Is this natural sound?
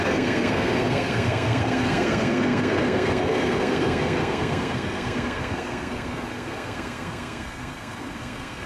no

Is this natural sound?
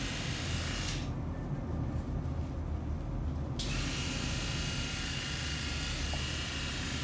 yes